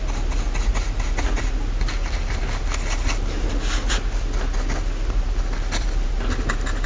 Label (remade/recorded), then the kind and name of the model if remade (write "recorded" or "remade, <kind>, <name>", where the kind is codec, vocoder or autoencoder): recorded